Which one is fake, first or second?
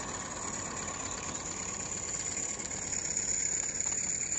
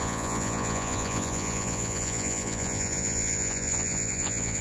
second